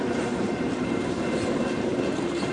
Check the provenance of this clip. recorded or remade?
remade